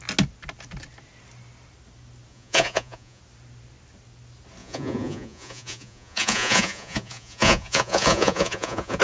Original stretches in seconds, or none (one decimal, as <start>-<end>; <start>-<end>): 0.0-2.3; 3.2-4.6